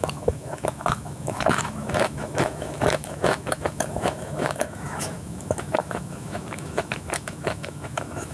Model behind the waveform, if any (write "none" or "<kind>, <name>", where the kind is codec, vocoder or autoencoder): autoencoder, DAC-VAE